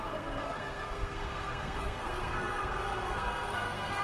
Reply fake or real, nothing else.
fake